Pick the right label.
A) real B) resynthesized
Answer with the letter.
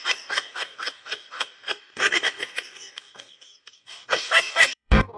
B